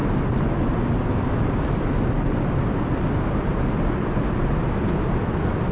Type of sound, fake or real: real